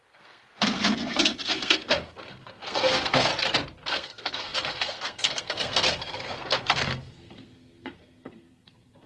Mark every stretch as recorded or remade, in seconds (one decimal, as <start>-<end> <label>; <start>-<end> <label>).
0.0-3.3 remade; 3.3-3.9 recorded; 3.9-9.1 remade